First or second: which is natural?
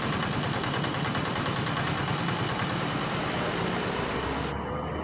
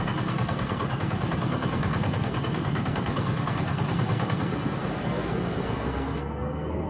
first